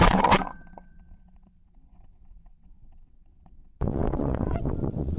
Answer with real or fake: fake